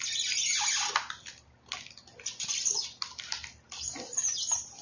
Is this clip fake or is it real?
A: real